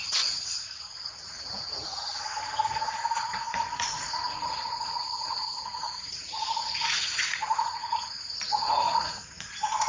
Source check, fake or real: fake